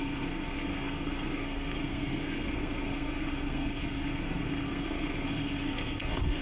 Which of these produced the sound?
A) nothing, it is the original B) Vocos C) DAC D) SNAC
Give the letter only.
D